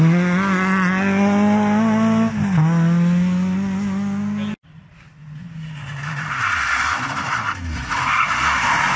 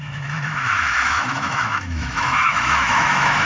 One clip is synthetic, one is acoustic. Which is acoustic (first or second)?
first